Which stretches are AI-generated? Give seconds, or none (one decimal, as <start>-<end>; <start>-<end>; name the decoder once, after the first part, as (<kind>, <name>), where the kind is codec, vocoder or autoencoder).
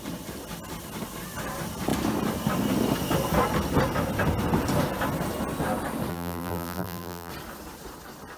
6.1-7.3 (vocoder, BigVGAN v2)